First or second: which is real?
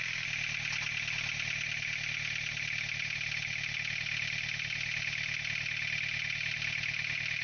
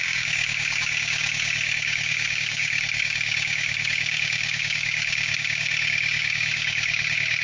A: first